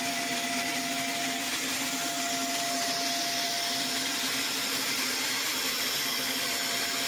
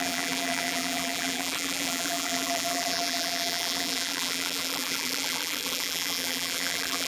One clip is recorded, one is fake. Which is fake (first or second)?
second